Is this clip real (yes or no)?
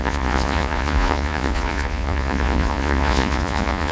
no